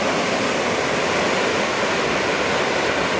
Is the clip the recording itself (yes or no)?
yes